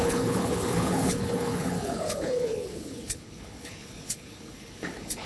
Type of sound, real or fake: fake